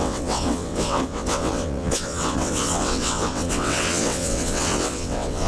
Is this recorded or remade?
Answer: remade